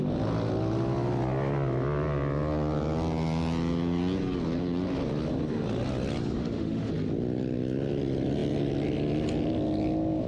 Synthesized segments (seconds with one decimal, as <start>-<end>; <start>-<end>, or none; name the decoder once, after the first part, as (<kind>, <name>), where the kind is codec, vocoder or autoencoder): 6.4-6.9 (autoencoder, DAC-VAE)